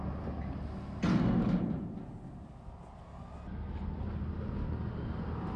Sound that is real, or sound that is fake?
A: real